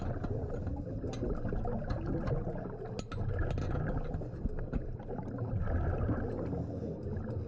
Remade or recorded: recorded